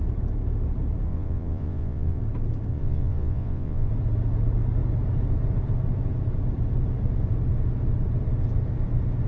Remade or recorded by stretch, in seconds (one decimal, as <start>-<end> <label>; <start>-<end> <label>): 0.0-1.1 recorded; 1.1-2.2 remade; 2.2-2.7 recorded; 2.7-3.9 remade; 3.9-9.3 recorded